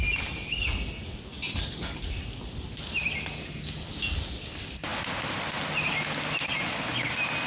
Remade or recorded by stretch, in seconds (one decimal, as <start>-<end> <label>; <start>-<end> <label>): 0.0-7.5 recorded